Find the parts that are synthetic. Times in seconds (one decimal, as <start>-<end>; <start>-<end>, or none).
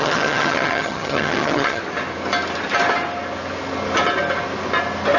0.0-1.8